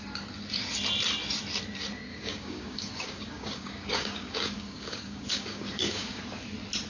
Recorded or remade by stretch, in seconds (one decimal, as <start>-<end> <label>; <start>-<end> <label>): 0.0-2.1 recorded; 2.1-6.2 remade; 6.2-6.9 recorded